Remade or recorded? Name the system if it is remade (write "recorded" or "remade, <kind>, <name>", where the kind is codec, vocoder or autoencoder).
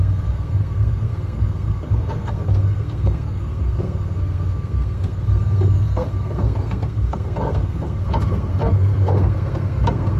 remade, codec, SNAC